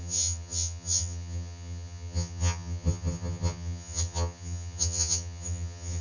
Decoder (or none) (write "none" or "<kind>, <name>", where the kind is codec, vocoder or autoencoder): vocoder, HiFi-GAN